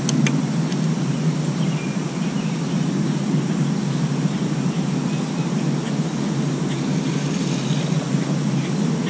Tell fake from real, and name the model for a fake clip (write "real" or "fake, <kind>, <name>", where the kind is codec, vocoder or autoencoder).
real